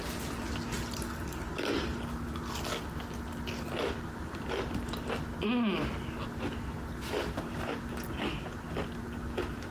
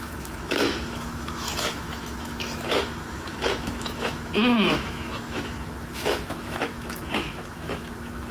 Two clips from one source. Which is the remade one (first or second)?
second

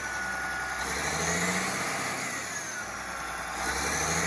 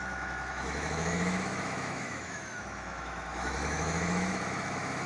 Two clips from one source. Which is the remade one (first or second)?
second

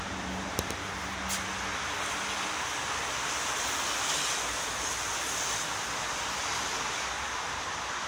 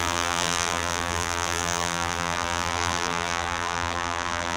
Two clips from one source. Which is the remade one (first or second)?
second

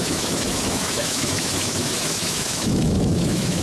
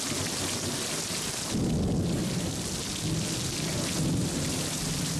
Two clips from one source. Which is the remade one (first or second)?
first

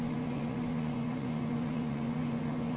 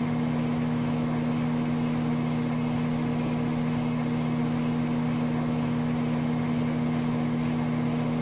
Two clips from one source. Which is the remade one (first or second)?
first